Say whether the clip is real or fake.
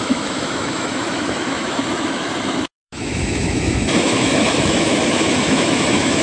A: fake